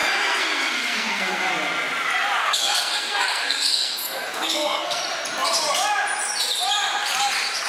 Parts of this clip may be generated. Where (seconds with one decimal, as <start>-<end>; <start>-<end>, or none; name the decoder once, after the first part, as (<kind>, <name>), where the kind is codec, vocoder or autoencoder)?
0.0-1.5 (codec, SNAC); 2.4-5.0